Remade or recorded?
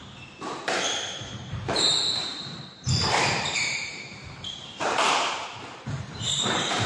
remade